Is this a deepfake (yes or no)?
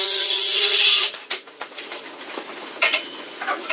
yes